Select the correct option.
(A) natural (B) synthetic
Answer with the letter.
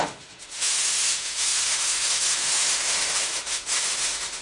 B